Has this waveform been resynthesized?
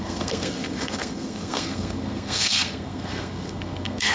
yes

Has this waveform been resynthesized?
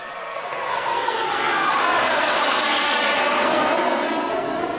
yes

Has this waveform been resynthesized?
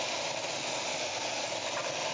no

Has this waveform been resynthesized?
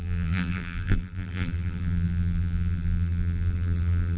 yes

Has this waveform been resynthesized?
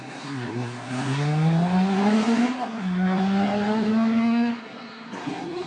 yes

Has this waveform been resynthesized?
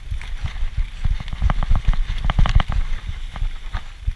no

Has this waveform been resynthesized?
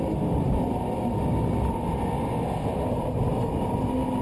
no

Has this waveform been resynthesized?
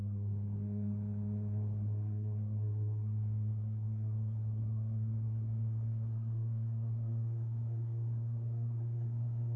yes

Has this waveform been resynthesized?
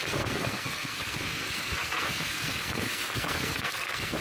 yes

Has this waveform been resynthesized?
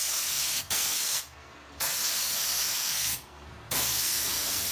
yes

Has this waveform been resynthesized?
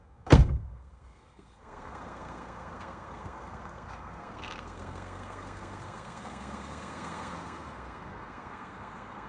yes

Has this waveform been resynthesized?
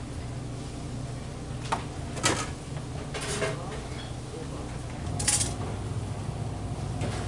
no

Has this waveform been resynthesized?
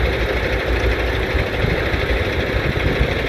no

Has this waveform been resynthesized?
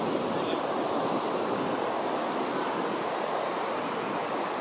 no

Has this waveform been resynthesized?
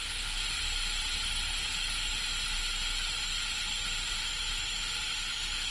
no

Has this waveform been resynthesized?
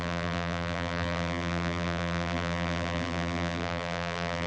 yes